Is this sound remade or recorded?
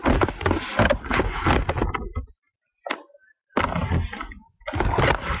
recorded